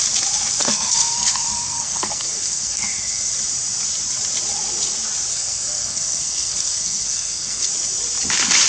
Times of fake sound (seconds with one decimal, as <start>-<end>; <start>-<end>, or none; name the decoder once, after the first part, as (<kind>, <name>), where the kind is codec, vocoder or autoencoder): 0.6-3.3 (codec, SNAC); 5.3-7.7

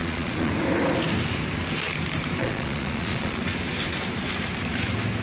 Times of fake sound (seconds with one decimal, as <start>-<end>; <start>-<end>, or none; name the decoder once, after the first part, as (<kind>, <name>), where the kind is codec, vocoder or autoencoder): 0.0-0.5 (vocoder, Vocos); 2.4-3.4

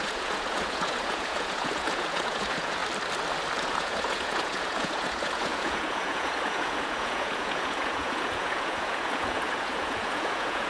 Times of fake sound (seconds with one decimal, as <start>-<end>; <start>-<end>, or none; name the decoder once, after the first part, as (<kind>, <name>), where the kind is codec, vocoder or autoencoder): 0.0-2.8 (vocoder, Vocos); 3.6-10.7